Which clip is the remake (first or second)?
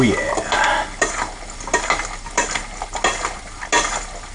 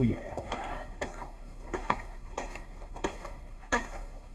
second